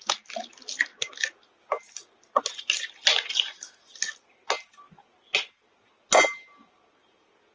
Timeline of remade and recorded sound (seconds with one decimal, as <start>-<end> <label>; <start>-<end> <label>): 0.0-7.5 recorded